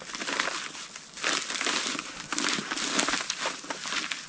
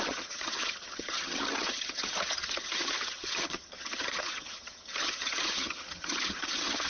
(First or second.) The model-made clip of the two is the second